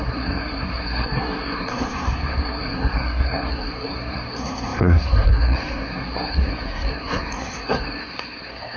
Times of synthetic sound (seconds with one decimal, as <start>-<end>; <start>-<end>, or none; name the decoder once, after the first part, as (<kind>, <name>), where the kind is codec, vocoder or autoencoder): 0.0-8.8 (codec, SNAC)